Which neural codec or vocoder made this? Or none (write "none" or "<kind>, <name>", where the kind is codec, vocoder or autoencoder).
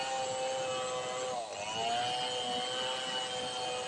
none